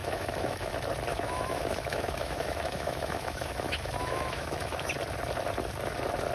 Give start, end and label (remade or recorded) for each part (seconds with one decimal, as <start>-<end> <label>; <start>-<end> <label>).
0.0-0.7 remade; 0.7-1.1 recorded; 1.1-4.9 remade; 4.9-6.3 recorded